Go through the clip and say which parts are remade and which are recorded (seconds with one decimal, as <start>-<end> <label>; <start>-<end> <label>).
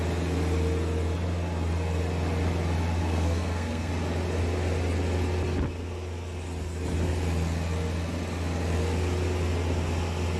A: 0.0-3.0 recorded; 3.0-3.9 remade; 3.9-10.4 recorded